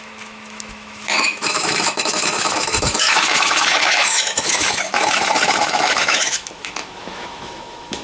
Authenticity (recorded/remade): remade